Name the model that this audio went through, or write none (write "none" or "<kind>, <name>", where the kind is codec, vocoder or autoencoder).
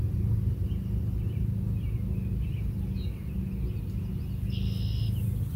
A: none